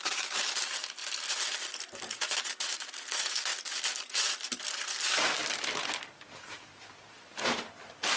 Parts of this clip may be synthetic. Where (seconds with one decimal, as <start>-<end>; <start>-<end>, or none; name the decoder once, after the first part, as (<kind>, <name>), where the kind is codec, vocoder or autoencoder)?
0.0-1.0 (vocoder, BigVGAN v2); 1.8-3.5; 7.1-8.2